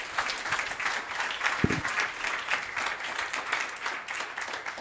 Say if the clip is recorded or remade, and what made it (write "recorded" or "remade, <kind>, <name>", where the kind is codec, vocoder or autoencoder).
recorded